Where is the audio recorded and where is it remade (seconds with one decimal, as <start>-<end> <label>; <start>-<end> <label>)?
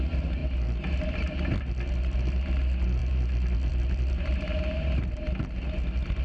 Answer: 0.0-6.2 recorded